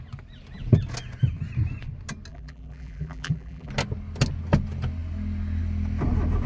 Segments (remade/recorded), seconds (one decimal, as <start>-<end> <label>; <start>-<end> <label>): 0.0-2.3 recorded; 2.3-3.7 remade; 3.7-6.5 recorded

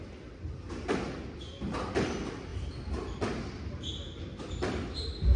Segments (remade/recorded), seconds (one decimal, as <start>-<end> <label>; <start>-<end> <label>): 0.0-5.4 recorded

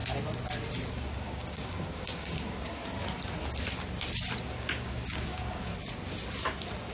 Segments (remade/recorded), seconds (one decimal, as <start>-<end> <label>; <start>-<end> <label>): 0.0-0.9 recorded; 0.9-2.8 remade; 2.8-4.4 recorded; 4.4-5.7 remade; 5.7-6.9 recorded

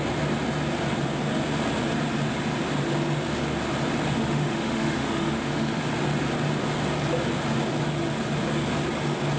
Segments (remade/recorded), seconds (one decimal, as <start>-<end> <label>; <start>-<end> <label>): 0.0-4.2 recorded; 4.2-5.8 remade; 5.8-9.4 recorded

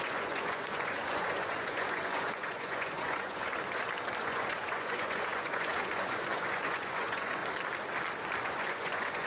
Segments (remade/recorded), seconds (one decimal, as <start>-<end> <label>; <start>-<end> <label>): 0.0-3.5 remade; 3.5-4.2 recorded; 4.2-7.4 remade; 7.4-8.4 recorded; 8.4-9.3 remade

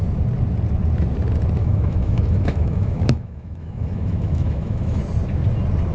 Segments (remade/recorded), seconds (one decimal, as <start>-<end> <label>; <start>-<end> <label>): 0.0-1.6 recorded; 1.6-5.0 remade; 5.0-5.9 recorded

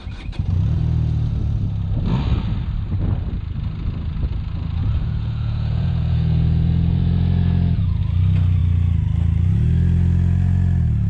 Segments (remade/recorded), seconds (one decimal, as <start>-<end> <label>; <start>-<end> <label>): 0.0-4.8 recorded; 4.8-8.0 remade; 8.0-11.1 recorded